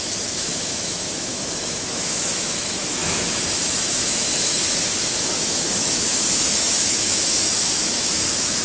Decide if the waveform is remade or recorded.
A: remade